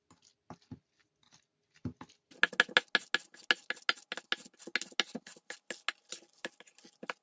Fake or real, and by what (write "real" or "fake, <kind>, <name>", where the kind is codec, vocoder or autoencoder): real